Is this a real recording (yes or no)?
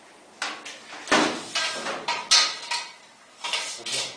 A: yes